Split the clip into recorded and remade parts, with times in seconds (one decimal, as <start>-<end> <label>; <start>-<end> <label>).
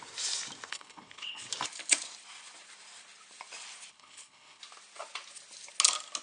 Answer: 0.0-0.7 recorded; 0.7-1.5 remade; 1.5-3.9 recorded; 3.9-4.6 remade; 4.6-6.2 recorded